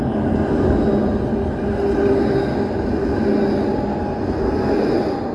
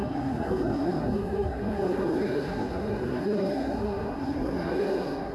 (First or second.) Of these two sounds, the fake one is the second